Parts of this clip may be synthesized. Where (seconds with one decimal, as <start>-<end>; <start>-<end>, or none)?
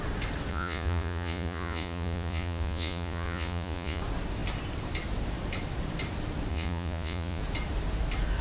0.5-4.0; 6.5-7.4